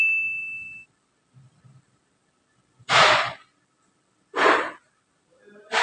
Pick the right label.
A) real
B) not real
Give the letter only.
A